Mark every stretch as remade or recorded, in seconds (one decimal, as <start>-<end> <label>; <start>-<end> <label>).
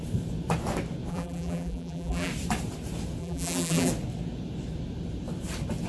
0.0-1.1 recorded; 1.1-2.3 remade; 2.3-3.2 recorded; 3.2-3.9 remade; 3.9-5.9 recorded